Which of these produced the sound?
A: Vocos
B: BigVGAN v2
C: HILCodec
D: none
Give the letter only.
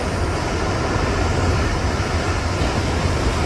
D